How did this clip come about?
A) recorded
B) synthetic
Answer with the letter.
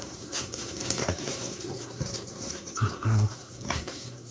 B